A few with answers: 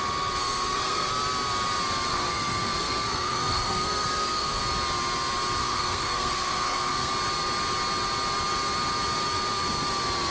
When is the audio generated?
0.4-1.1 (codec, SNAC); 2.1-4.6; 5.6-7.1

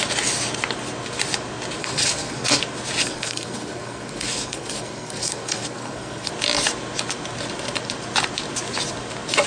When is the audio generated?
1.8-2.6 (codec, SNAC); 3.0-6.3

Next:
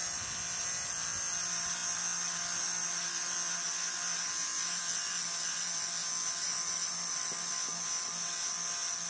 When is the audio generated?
none